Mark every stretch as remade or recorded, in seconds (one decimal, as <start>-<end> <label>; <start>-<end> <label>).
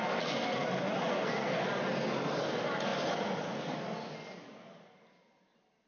0.0-1.1 recorded; 1.1-1.6 remade; 1.6-5.9 recorded